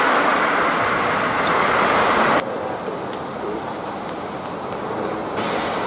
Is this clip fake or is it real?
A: real